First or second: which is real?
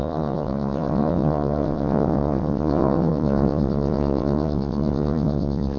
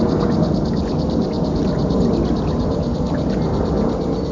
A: second